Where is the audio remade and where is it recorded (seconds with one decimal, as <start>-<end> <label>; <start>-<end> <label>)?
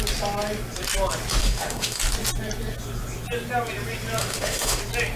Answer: 0.0-1.4 recorded; 1.4-2.0 remade; 2.0-4.2 recorded; 4.2-4.8 remade; 4.8-5.2 recorded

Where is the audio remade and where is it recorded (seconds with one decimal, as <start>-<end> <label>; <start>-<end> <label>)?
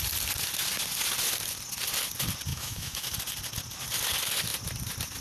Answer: 0.0-2.5 recorded; 2.5-3.1 remade; 3.1-5.2 recorded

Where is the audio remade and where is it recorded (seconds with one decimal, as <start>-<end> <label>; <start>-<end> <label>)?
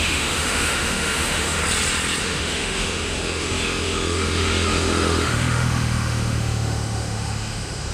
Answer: 0.0-1.6 remade; 1.6-2.2 recorded; 2.2-7.9 remade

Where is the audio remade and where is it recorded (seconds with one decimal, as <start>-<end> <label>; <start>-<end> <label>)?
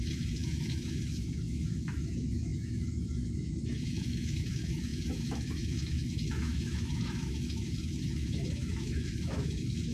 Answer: 0.0-9.9 remade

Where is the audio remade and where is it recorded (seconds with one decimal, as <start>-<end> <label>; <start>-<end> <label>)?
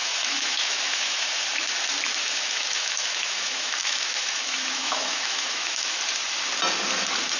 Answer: 0.0-1.4 remade; 1.4-2.2 recorded; 2.2-6.0 remade; 6.0-7.4 recorded